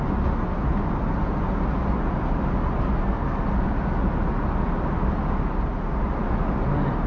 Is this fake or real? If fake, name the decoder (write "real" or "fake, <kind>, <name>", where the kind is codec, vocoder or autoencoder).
real